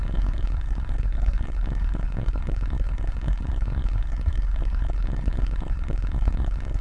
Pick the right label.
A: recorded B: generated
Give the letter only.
B